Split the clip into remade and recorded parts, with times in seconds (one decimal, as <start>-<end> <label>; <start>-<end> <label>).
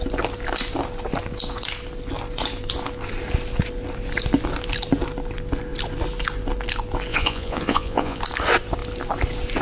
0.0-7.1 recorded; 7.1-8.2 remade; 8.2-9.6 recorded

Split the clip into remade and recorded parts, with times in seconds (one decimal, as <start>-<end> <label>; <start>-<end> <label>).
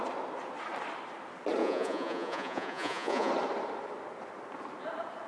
0.0-1.6 recorded; 1.6-3.3 remade; 3.3-5.3 recorded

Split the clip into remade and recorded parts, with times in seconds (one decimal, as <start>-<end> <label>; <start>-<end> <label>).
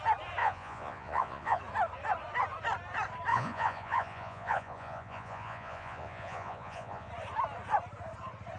0.0-0.4 recorded; 0.4-1.6 remade; 1.6-3.3 recorded; 3.3-7.1 remade; 7.1-8.6 recorded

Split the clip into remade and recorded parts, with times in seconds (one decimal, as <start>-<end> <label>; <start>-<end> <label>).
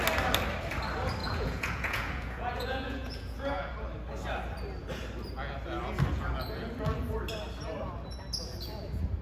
0.0-1.2 recorded; 1.2-3.7 remade; 3.7-9.2 recorded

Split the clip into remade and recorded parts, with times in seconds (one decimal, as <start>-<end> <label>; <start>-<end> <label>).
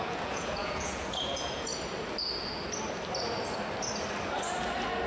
0.0-1.7 remade; 1.7-5.1 recorded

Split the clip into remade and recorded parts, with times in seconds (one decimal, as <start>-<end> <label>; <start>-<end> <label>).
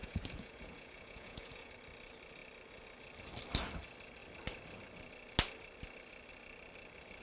0.0-1.7 remade; 1.7-7.2 recorded